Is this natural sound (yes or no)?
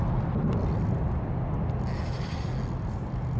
yes